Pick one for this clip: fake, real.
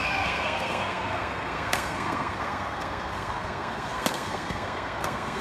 fake